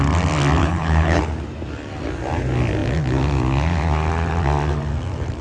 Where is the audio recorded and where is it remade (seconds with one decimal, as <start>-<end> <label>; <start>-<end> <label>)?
0.0-0.6 recorded; 0.6-1.2 remade; 1.2-5.4 recorded